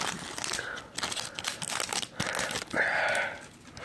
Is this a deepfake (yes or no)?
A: no